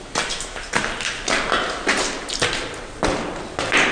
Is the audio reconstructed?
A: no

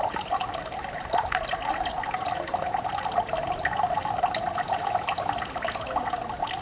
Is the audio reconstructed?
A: no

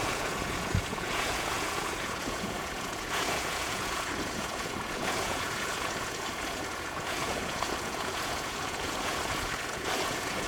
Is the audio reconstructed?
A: yes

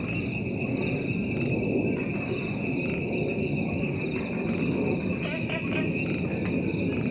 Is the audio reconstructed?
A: no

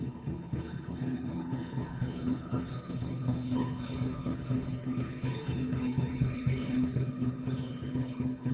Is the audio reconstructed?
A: yes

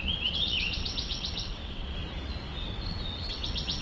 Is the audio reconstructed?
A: yes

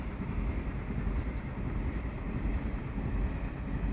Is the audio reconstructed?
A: no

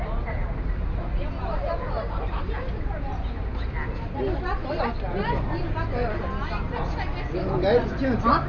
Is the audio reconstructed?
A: no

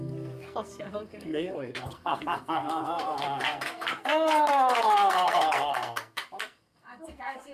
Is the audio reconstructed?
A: yes